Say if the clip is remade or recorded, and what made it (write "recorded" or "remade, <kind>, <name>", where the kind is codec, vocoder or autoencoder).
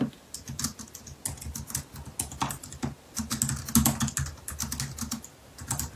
recorded